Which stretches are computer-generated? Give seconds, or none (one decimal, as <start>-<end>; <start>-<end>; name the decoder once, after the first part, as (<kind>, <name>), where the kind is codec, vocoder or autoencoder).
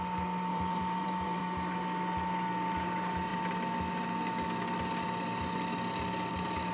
0.5-1.4 (vocoder, BigVGAN v2)